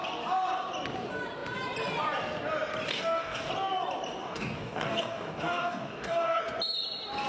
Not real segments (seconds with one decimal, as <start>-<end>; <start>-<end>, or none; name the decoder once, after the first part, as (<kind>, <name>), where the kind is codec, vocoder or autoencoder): 2.9-3.5 (codec, DAC); 4.2-6.4